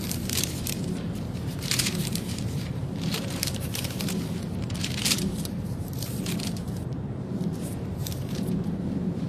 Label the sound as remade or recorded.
remade